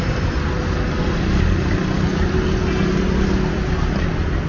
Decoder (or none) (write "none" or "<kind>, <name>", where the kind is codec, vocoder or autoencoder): none